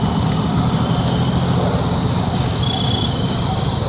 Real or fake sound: real